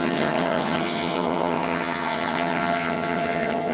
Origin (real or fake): fake